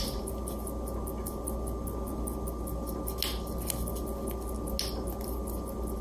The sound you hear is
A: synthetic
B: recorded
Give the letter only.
B